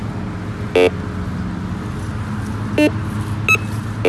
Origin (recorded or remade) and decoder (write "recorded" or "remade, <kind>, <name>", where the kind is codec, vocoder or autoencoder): recorded